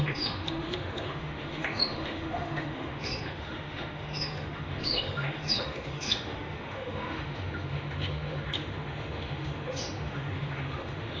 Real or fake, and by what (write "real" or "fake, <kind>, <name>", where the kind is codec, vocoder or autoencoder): fake, autoencoder, DAC-VAE